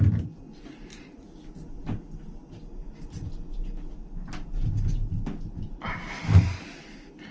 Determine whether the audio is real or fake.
real